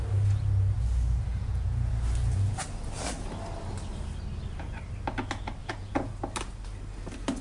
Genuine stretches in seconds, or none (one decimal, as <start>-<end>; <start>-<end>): 0.0-1.3; 1.9-5.6; 6.1-7.4